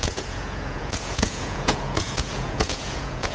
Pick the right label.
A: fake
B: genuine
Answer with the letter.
A